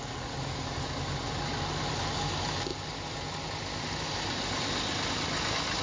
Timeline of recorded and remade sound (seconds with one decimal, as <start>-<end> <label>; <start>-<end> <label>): 0.0-5.8 recorded